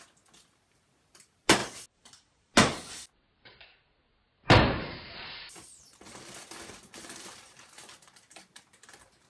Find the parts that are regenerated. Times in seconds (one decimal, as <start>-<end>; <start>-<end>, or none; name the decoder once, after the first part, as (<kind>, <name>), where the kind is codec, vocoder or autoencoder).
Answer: none